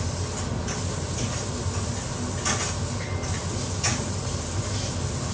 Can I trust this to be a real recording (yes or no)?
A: yes